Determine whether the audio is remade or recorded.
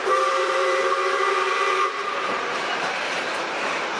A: remade